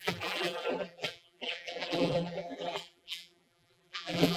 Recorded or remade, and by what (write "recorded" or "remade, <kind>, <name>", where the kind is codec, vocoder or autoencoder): remade, vocoder, BigVGAN v2